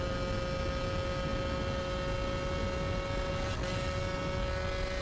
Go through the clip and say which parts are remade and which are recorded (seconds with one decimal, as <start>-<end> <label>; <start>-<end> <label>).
0.0-5.0 recorded